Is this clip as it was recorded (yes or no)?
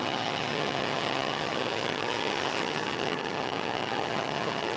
no